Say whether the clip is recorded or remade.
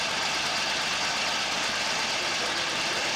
recorded